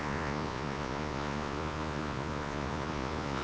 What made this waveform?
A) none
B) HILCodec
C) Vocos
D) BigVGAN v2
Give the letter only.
C